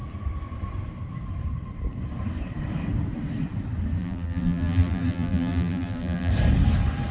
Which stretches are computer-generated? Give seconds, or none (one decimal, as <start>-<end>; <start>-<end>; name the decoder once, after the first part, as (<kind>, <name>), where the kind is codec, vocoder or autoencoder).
4.0-6.3 (vocoder, BigVGAN v2)